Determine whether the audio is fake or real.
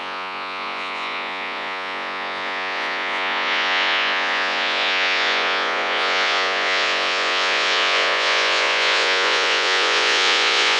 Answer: fake